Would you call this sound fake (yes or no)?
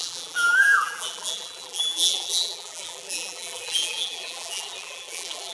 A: yes